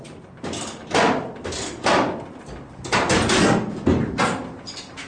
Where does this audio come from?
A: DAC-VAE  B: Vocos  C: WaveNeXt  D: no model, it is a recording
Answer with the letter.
D